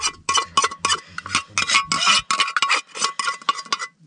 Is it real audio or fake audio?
real